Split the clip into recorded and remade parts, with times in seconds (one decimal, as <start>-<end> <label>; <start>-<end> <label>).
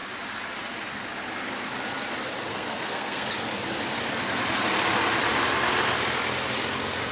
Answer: 0.0-2.5 recorded; 2.5-3.3 remade; 3.3-7.1 recorded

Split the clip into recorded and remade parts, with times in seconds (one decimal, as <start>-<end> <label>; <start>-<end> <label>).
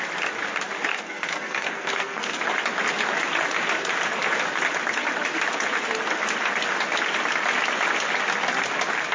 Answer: 0.0-0.9 recorded; 0.9-2.4 remade; 2.4-9.1 recorded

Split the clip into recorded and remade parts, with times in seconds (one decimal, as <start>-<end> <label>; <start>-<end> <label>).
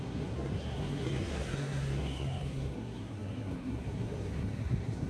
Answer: 0.0-5.1 remade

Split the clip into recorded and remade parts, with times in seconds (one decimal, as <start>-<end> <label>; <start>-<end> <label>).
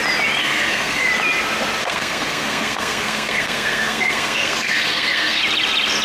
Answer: 0.0-0.4 recorded; 0.4-1.1 remade; 1.1-1.8 recorded; 1.8-5.4 remade; 5.4-6.0 recorded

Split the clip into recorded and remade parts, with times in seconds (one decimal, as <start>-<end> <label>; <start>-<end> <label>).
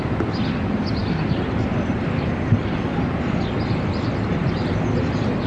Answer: 0.0-5.5 recorded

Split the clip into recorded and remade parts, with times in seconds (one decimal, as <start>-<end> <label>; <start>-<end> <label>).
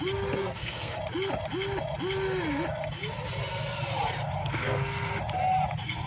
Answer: 0.0-0.4 recorded; 0.4-1.0 remade; 1.0-4.4 recorded; 4.4-5.1 remade; 5.1-6.1 recorded